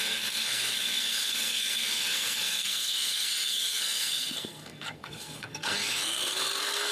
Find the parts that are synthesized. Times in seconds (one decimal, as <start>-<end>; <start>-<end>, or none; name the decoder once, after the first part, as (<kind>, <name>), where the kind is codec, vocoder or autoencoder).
0.0-6.9 (codec, SNAC)